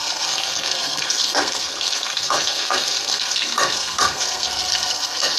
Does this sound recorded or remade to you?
remade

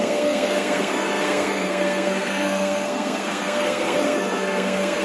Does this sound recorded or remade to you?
remade